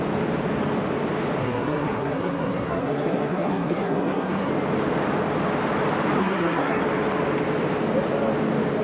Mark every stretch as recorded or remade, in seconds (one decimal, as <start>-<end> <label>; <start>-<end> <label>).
0.0-1.4 recorded; 1.4-4.5 remade; 4.5-6.2 recorded; 6.2-6.8 remade; 6.8-8.8 recorded